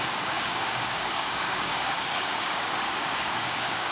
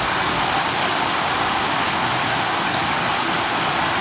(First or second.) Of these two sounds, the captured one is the second